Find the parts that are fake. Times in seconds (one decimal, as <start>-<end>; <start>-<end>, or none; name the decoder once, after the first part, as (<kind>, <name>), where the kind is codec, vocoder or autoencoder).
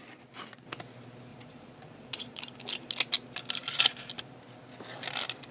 1.3-2.4 (vocoder, Vocos)